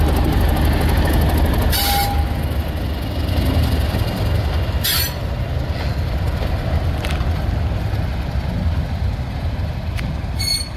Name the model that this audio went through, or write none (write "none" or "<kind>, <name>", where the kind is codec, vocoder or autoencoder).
none